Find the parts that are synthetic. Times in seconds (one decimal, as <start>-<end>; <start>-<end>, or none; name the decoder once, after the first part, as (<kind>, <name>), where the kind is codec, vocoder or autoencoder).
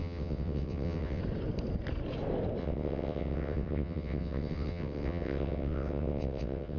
0.0-1.2 (vocoder, WaveNeXt); 2.6-6.8